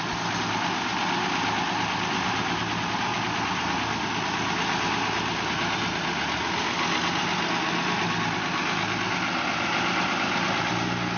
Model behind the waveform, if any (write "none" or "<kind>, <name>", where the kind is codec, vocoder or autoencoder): none